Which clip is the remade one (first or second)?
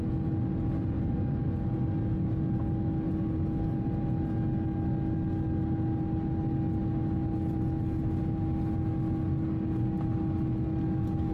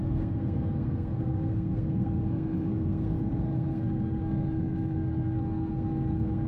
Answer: second